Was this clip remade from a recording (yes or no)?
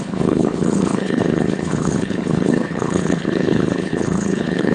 yes